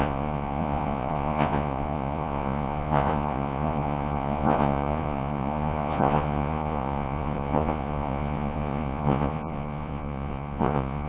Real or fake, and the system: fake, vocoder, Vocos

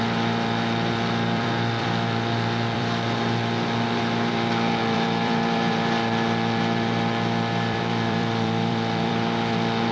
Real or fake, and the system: fake, vocoder, BigVGAN v2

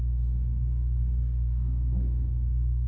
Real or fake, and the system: real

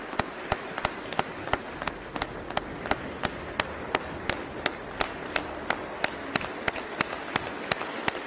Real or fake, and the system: real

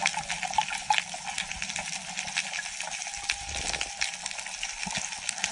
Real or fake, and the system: real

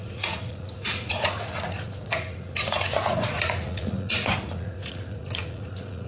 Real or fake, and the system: fake, vocoder, Vocos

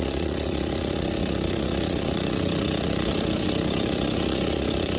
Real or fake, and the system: fake, vocoder, Vocos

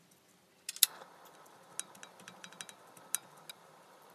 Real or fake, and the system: real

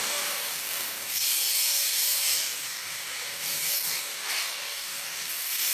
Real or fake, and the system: fake, codec, DAC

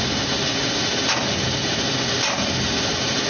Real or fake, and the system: real